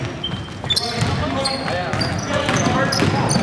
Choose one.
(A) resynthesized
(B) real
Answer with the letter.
B